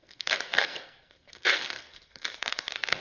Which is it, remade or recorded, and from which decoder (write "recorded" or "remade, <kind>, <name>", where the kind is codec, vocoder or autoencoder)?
remade, codec, SNAC